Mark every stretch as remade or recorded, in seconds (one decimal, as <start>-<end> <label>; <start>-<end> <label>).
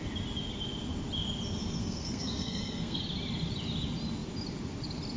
0.0-1.8 recorded; 1.8-3.0 remade; 3.0-5.2 recorded